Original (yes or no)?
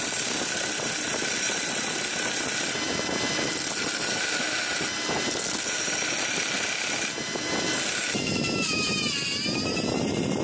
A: yes